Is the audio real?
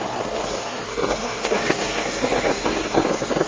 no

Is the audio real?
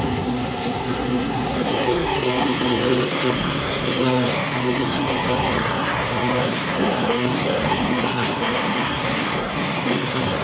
no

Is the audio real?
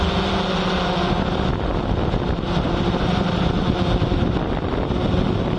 yes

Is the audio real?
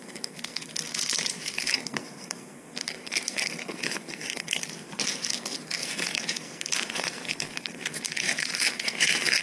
no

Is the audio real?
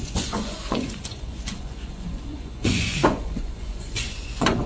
no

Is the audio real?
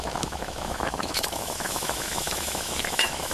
no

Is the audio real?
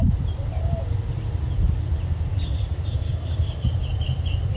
yes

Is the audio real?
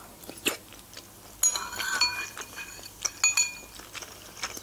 yes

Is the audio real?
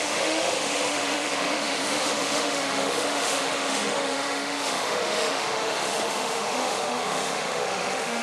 no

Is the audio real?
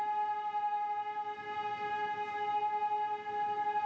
yes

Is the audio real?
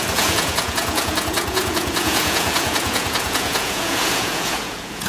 no